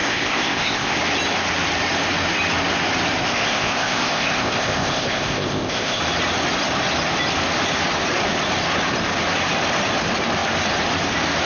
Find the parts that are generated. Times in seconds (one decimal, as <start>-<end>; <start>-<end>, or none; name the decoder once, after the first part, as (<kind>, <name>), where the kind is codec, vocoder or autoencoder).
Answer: 0.0-1.0 (codec, ZipCodec); 3.3-6.0